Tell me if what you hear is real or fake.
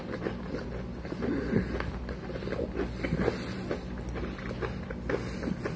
real